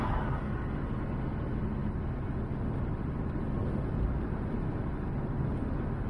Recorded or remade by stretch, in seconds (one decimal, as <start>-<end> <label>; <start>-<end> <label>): 0.0-6.1 recorded